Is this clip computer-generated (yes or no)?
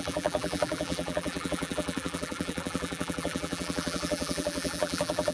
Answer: yes